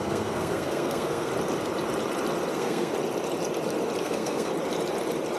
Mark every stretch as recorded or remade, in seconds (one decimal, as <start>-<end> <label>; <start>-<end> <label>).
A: 0.0-1.3 remade; 1.3-2.5 recorded; 2.5-2.9 remade; 2.9-4.0 recorded; 4.0-4.5 remade; 4.5-5.4 recorded